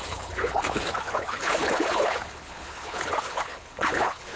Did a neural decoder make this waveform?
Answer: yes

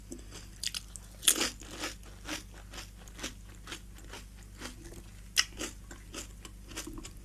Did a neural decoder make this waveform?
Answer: no